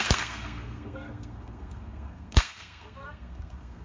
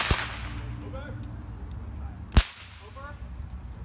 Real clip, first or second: second